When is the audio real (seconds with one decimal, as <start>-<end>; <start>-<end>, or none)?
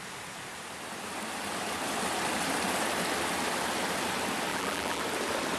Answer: 0.0-4.5; 5.0-5.6